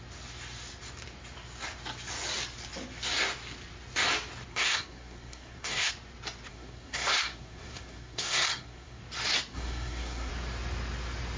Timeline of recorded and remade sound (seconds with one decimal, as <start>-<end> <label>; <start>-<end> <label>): 0.0-4.5 recorded; 4.5-5.9 remade; 5.9-6.5 recorded; 6.5-9.0 remade; 9.0-9.5 recorded; 9.5-10.3 remade; 10.3-11.4 recorded